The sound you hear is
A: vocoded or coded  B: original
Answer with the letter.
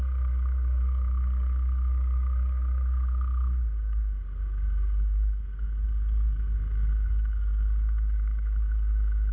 A